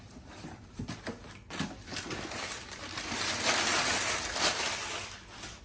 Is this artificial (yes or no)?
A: no